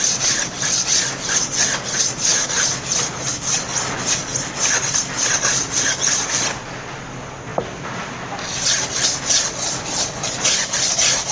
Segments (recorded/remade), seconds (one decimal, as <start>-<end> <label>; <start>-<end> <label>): 0.0-11.3 recorded